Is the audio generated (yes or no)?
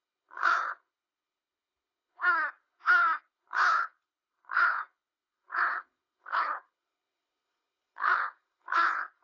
yes